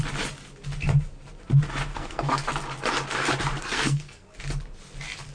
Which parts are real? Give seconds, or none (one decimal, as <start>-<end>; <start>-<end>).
0.0-1.9; 2.5-3.6; 4.4-5.3